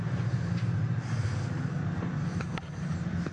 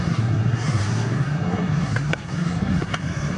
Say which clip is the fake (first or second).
second